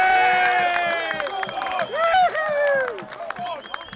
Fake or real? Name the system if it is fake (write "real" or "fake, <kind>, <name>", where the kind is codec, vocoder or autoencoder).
real